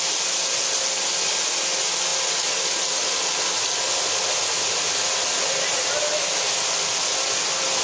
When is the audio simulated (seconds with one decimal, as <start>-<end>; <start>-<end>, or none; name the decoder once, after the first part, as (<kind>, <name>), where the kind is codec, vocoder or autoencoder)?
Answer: none